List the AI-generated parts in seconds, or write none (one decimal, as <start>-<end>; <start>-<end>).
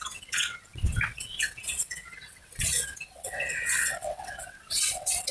0.0-5.3